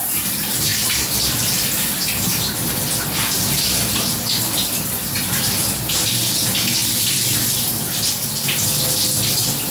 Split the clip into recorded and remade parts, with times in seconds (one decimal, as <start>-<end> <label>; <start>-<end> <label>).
0.0-9.7 recorded